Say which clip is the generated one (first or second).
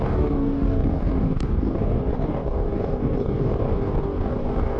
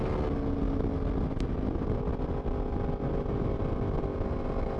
first